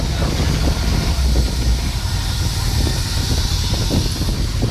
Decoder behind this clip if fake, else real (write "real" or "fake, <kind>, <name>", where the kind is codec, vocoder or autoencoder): real